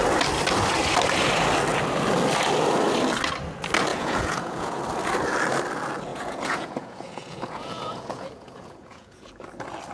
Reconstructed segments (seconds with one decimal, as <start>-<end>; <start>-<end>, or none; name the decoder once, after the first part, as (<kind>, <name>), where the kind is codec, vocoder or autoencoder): 3.9-4.8 (vocoder, Vocos); 6.1-9.3